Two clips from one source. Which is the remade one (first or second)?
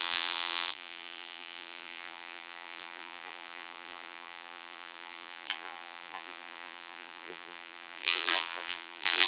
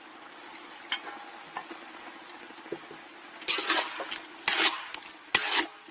first